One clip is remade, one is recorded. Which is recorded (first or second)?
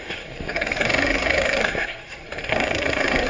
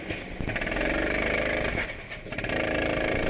second